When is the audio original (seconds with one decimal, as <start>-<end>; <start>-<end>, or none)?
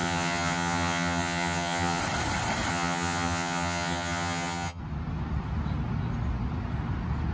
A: 2.0-2.7; 4.8-7.3